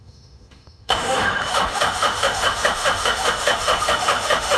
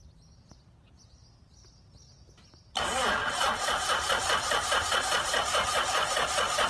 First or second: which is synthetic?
first